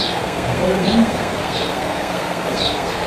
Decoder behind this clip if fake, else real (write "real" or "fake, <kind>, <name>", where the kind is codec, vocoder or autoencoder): fake, codec, SNAC